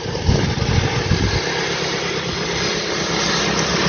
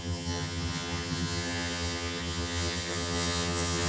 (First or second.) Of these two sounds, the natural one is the first